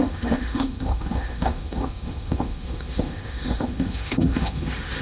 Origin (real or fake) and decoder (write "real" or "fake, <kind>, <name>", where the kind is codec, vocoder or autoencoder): fake, autoencoder, DAC-VAE